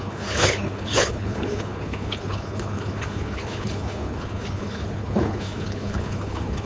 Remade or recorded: remade